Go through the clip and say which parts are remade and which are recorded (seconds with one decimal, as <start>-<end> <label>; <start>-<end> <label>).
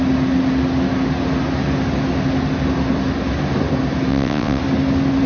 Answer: 0.0-4.1 recorded; 4.1-4.6 remade; 4.6-5.3 recorded